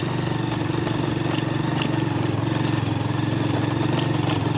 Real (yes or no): yes